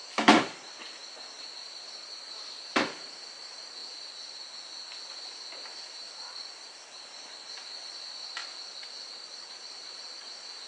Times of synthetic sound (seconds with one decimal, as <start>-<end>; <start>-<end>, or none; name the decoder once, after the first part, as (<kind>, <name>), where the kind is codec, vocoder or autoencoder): 0.0-3.8 (vocoder, BigVGAN v2); 6.3-8.4; 9.5-10.7

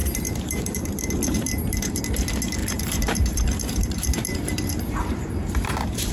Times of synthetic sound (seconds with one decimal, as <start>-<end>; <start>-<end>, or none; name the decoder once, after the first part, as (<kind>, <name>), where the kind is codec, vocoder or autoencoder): 0.0-2.0 (vocoder, BigVGAN v2); 2.6-6.1

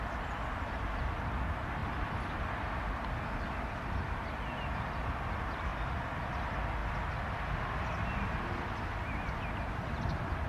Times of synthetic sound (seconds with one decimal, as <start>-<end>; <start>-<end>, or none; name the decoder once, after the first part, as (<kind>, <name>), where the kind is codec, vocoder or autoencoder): none

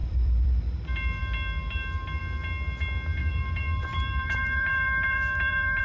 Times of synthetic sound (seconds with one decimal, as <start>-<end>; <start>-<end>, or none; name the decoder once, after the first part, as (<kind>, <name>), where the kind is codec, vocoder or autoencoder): 0.0-0.5 (vocoder, BigVGAN v2); 3.2-5.8

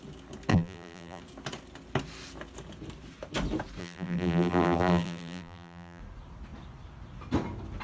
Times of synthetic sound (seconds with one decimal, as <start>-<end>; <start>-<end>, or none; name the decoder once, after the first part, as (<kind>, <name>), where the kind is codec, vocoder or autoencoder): 0.5-1.2 (vocoder, BigVGAN v2); 3.8-6.0

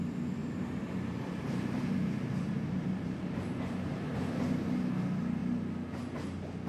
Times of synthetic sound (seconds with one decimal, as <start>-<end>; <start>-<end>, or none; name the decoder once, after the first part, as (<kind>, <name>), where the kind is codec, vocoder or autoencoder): 0.4-4.4 (vocoder, BigVGAN v2)

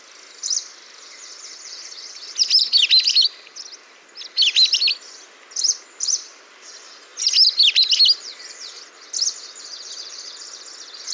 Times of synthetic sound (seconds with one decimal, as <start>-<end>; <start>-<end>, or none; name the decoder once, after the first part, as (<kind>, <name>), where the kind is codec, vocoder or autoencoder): none

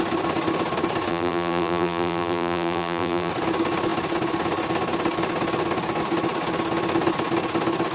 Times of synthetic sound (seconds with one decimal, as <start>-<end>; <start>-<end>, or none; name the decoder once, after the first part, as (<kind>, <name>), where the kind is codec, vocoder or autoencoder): 1.1-3.3 (vocoder, BigVGAN v2)